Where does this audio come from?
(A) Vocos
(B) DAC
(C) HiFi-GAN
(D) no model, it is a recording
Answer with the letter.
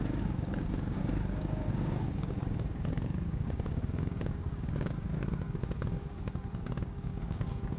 B